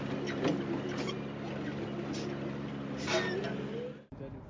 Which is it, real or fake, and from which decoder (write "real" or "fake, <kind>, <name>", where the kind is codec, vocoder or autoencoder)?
real